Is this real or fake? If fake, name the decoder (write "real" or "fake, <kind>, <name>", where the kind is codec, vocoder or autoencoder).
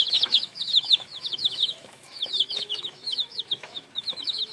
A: fake, autoencoder, DAC-VAE